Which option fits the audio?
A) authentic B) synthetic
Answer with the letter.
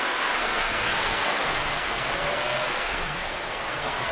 B